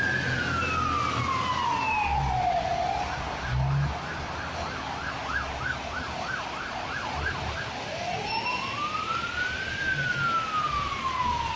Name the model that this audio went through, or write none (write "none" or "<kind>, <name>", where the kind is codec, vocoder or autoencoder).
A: none